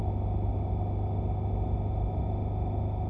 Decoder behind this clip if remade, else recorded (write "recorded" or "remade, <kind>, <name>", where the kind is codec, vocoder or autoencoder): recorded